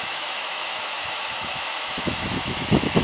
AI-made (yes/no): yes